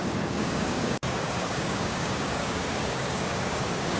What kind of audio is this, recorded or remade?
remade